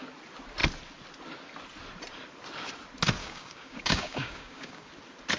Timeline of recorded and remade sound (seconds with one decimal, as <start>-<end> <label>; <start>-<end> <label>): 0.0-3.2 recorded; 3.2-4.9 remade; 4.9-5.4 recorded